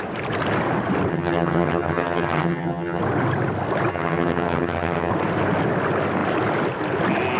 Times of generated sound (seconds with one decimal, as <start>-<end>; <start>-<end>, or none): 1.1-3.0; 3.9-5.1